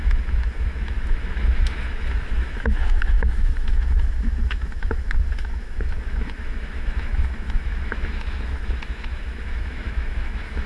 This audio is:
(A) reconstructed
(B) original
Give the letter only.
A